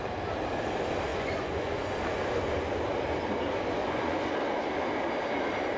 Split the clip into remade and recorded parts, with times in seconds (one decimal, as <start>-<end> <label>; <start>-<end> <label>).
0.0-1.1 recorded; 1.1-2.0 remade; 2.0-3.8 recorded; 3.8-4.3 remade; 4.3-5.8 recorded